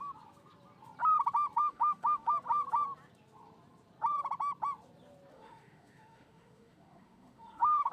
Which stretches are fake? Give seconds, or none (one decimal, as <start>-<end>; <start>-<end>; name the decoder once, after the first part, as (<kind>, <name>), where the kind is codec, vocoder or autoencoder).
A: 1.6-2.3 (autoencoder, DAC-VAE); 5.3-7.9